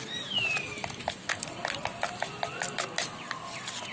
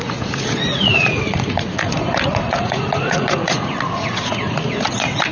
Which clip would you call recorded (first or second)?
first